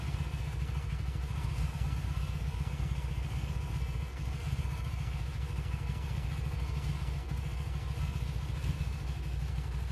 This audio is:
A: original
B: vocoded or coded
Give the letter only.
B